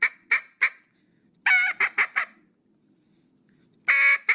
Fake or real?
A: real